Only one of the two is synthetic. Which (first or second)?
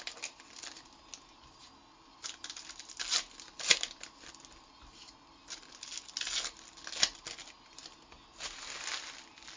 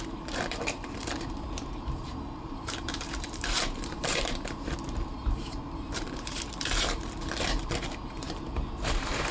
second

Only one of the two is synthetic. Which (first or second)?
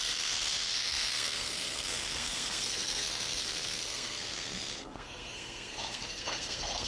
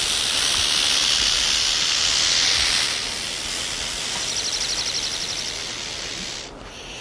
first